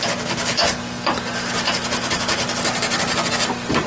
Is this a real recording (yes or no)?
yes